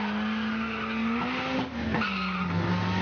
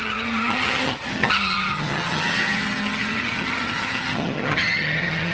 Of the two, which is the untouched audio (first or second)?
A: first